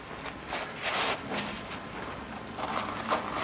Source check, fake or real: real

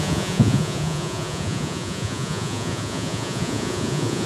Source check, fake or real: fake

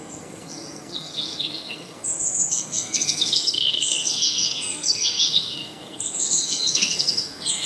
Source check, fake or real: fake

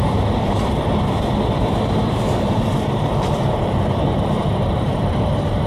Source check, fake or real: fake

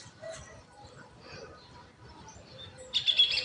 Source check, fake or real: real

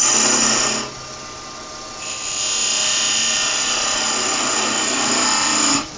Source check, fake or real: real